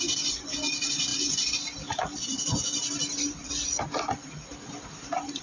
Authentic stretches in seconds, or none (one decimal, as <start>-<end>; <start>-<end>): 0.0-5.4